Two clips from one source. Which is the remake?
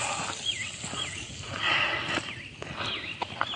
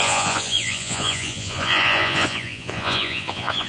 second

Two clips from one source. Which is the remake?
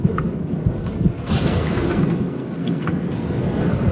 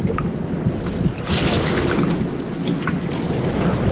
first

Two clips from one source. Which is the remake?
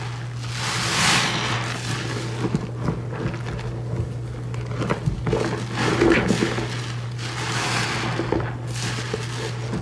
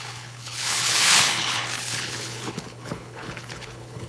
second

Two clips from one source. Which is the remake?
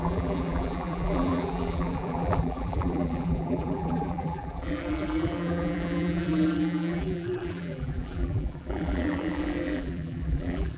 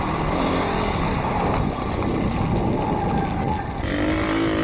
first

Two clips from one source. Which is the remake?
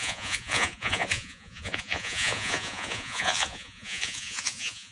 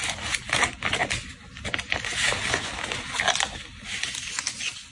first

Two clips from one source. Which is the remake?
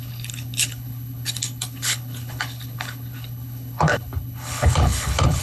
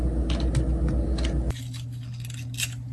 first